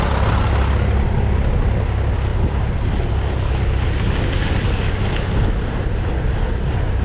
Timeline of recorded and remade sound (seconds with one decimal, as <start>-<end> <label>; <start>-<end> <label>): 0.0-7.0 recorded